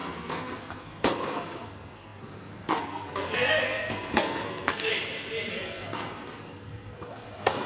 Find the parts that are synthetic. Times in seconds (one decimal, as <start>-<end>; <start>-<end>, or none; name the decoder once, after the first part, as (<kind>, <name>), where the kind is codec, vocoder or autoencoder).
0.0-4.9 (codec, SNAC); 5.5-7.7